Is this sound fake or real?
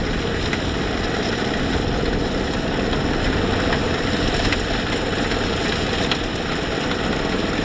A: real